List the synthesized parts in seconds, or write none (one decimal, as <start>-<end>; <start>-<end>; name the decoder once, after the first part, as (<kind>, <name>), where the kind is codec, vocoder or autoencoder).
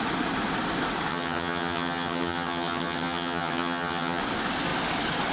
1.1-4.2 (vocoder, HiFi-GAN)